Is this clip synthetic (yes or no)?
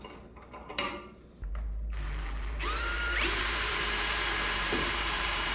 yes